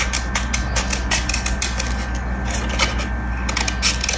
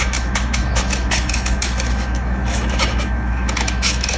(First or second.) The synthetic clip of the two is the second